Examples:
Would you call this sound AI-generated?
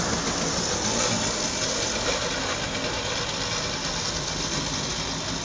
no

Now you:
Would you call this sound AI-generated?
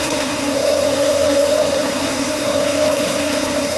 yes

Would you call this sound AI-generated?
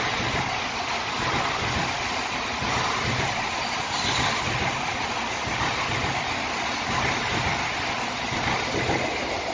no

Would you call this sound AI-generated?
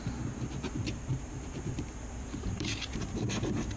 yes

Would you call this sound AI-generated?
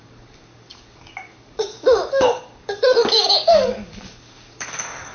yes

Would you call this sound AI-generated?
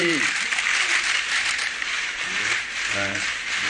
yes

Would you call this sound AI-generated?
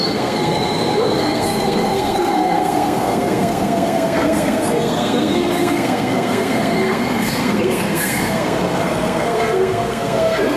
yes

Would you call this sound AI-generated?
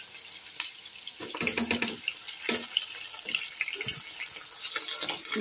no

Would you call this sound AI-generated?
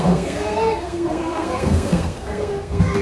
yes